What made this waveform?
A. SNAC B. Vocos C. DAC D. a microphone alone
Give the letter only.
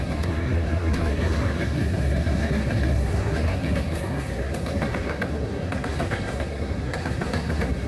A